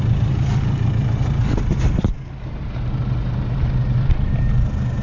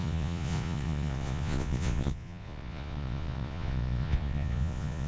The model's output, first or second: second